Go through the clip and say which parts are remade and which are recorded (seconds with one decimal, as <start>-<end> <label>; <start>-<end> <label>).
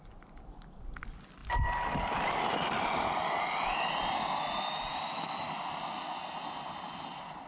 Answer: 0.0-4.9 recorded; 4.9-5.5 remade; 5.5-7.5 recorded